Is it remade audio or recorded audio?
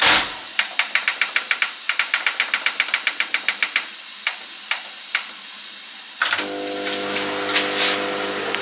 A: recorded